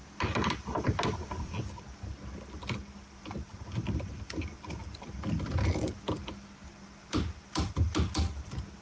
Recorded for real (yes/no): yes